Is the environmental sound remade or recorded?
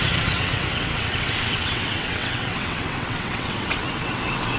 remade